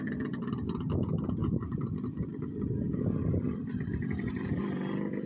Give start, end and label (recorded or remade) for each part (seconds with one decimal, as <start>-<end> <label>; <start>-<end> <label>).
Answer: 0.0-1.4 recorded; 1.4-4.6 remade; 4.6-5.3 recorded